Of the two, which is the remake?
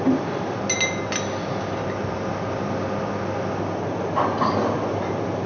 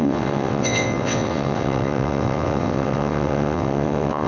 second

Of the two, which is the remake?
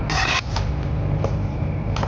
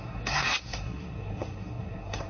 second